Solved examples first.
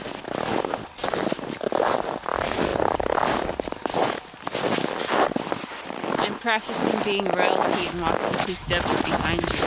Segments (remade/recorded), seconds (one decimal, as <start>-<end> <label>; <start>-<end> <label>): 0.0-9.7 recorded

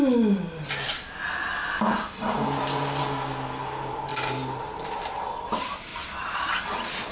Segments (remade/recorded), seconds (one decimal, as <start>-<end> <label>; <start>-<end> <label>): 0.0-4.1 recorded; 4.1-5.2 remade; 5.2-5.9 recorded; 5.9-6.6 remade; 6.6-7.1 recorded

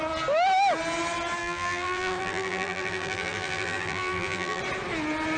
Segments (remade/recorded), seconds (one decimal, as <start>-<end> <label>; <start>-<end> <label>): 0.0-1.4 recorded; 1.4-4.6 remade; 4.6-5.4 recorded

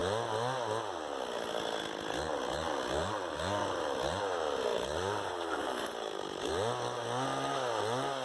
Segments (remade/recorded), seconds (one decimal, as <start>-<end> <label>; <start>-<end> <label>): 0.0-4.7 recorded; 4.7-6.5 remade; 6.5-8.2 recorded

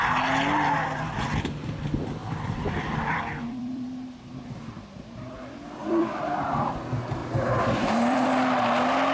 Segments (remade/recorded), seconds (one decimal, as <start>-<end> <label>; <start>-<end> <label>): 0.0-2.2 recorded; 2.2-4.3 remade; 4.3-5.8 recorded; 5.8-6.7 remade; 6.7-7.2 recorded; 7.2-8.3 remade; 8.3-9.1 recorded

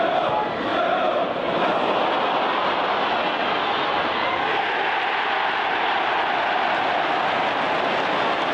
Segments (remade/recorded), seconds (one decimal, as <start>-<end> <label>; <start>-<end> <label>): 0.0-0.7 recorded; 0.7-2.0 remade; 2.0-8.5 recorded

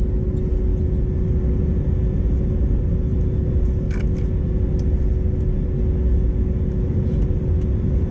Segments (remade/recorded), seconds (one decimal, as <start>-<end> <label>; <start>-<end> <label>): 0.0-8.1 recorded

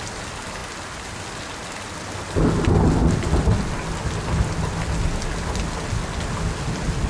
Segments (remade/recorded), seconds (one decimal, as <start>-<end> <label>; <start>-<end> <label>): 0.0-7.1 recorded